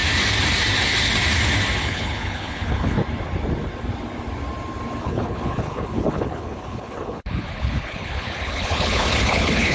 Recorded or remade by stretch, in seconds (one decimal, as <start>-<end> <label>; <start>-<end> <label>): 0.0-1.8 recorded; 1.8-3.0 remade; 3.0-5.0 recorded; 5.0-9.7 remade